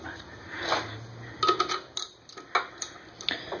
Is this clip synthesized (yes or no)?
no